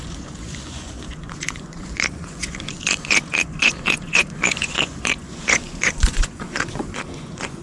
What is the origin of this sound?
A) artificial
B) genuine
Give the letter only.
A